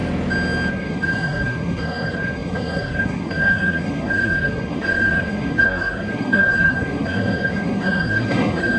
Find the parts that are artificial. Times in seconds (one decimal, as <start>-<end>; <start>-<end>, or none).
0.7-8.8